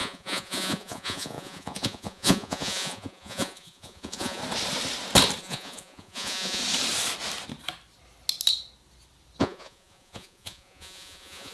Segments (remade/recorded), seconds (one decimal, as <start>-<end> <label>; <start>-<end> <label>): 0.0-4.4 remade; 4.4-5.4 recorded; 5.4-6.6 remade; 6.6-9.4 recorded; 9.4-11.5 remade